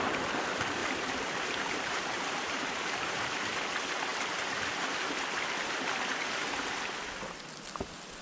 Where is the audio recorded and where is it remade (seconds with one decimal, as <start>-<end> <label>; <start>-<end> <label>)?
0.0-0.8 recorded; 0.8-3.3 remade; 3.3-8.2 recorded